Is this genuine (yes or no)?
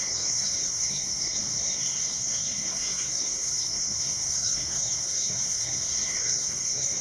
no